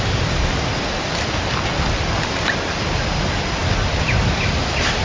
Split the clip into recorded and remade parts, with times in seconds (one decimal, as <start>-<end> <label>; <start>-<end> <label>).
0.0-5.0 recorded